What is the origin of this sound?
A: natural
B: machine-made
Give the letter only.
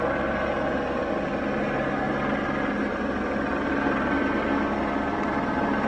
A